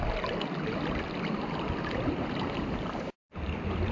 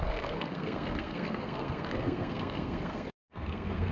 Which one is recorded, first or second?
first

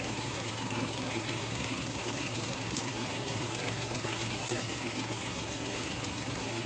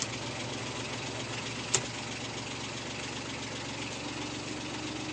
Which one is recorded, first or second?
second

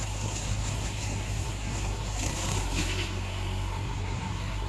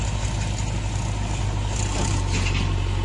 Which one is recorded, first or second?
second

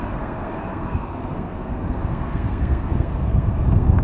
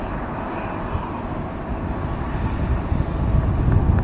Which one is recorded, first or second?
second